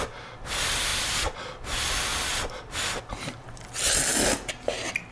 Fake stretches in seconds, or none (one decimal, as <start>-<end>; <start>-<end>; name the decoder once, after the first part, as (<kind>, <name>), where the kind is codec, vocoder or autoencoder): none